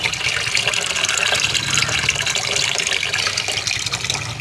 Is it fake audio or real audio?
real